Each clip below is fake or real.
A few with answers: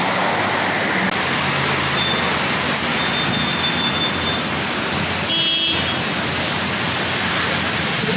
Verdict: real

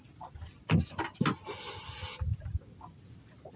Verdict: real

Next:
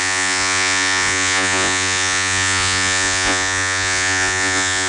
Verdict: fake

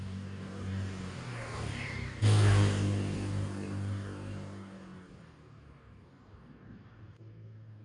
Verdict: fake